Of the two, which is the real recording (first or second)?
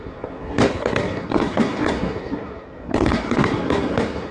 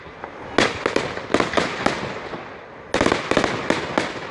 second